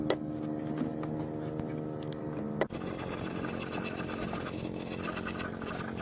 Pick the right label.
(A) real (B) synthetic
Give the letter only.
A